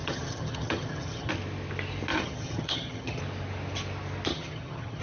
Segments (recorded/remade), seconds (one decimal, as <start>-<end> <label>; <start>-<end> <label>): 0.0-1.3 remade; 1.3-2.1 recorded; 2.1-3.2 remade; 3.2-4.3 recorded; 4.3-5.0 remade